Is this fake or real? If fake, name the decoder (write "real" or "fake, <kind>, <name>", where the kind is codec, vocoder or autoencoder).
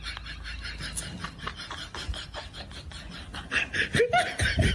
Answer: real